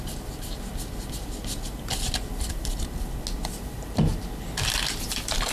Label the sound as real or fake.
real